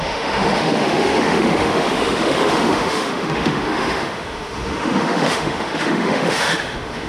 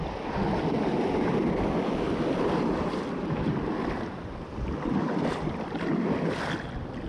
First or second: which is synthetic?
first